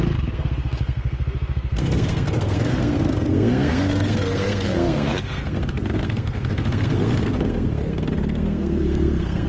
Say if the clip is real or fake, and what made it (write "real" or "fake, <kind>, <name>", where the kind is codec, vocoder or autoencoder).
fake, codec, SNAC